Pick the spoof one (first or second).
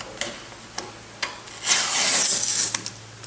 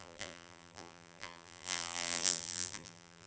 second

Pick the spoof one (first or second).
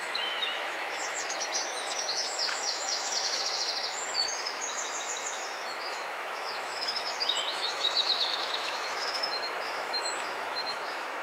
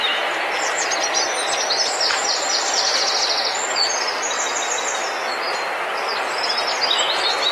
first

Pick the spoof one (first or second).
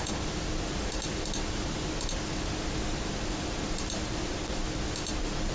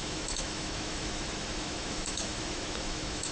second